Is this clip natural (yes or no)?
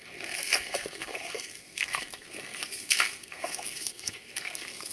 no